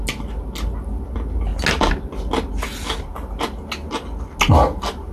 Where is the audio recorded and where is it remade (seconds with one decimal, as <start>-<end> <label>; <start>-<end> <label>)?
0.0-5.1 recorded